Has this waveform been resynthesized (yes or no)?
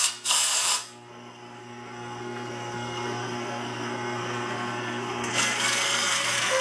yes